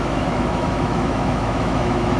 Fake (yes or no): yes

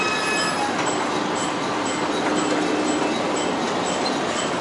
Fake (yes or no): no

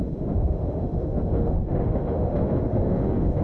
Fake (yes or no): yes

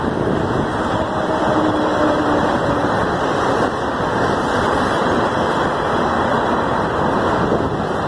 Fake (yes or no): no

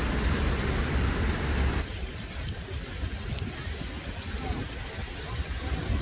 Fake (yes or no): no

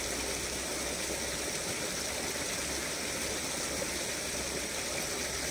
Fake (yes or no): no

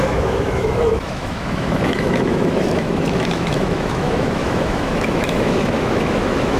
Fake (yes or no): yes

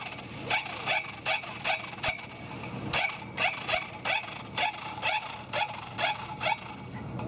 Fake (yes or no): no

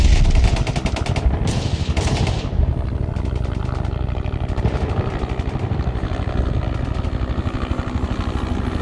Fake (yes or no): no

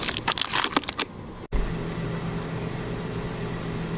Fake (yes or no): no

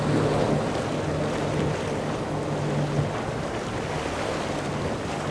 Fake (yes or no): no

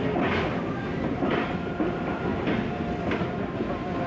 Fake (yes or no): no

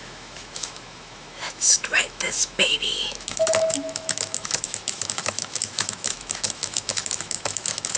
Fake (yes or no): yes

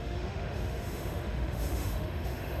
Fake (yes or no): yes